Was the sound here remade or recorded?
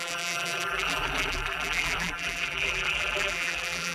remade